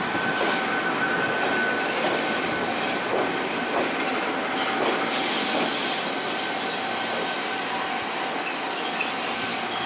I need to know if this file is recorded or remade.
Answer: recorded